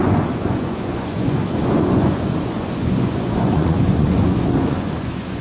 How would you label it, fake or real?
fake